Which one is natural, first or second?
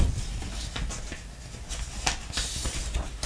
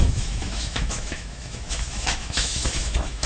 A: first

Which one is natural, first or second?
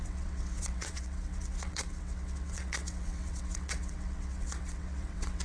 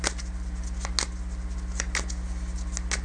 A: second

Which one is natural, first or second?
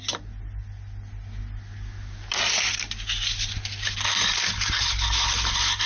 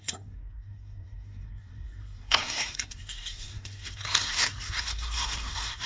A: first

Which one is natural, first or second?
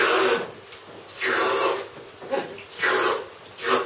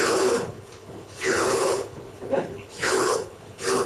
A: first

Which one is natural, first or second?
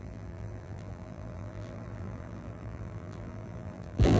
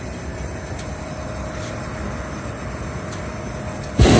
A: second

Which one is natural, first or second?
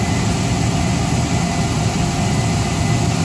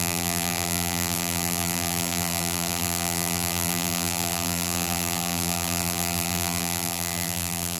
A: first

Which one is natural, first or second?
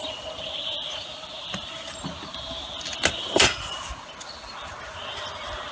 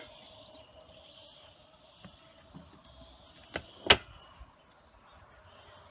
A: second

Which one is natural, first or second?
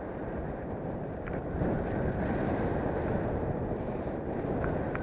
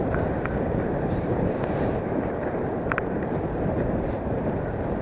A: first